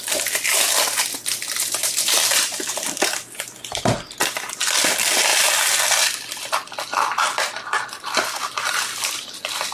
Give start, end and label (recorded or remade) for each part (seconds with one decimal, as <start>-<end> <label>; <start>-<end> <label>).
0.0-1.8 recorded; 1.8-3.8 remade; 3.8-9.7 recorded